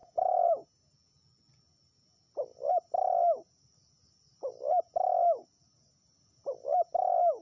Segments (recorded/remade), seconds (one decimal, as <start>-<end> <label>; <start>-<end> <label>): 0.0-0.5 remade; 0.5-7.4 recorded